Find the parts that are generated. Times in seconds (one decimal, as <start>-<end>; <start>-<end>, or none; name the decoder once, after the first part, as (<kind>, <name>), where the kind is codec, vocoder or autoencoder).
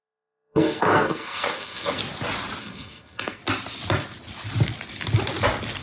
0.0-2.0 (codec, SNAC); 2.6-3.4